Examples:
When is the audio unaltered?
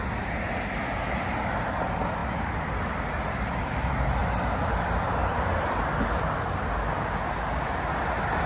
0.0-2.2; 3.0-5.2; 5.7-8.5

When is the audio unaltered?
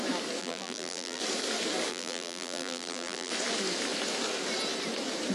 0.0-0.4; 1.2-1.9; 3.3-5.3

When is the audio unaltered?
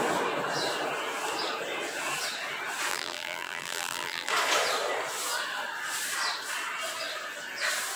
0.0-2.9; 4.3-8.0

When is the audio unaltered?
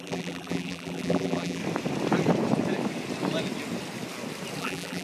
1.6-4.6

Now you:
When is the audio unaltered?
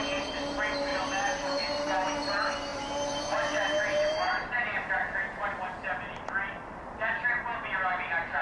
0.0-0.9; 2.2-2.7; 4.9-8.4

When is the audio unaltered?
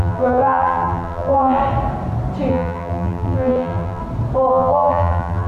1.6-2.5; 4.0-4.5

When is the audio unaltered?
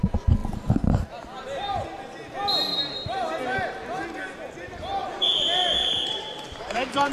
0.0-2.7; 3.4-5.0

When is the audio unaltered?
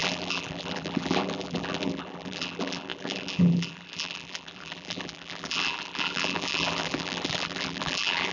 none